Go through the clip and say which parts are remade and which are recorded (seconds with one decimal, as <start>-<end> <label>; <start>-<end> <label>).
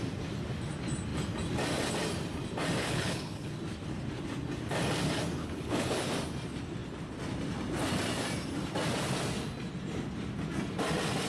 0.0-2.8 recorded; 2.8-3.5 remade; 3.5-5.4 recorded; 5.4-6.1 remade; 6.1-11.3 recorded